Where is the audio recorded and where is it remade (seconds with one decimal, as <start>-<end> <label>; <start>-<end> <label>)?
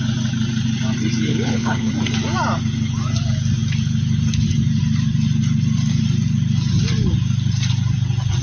0.0-1.3 recorded; 1.3-1.9 remade; 1.9-8.4 recorded